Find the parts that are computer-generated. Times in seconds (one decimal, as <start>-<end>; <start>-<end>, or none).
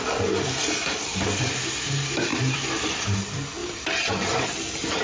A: 2.3-3.0; 3.6-5.0